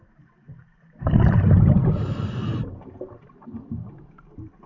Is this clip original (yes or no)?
yes